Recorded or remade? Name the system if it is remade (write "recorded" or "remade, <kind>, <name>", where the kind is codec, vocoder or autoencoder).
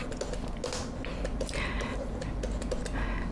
recorded